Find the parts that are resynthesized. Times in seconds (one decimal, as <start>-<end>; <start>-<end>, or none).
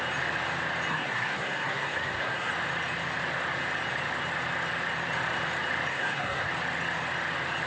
0.9-2.5; 5.9-6.5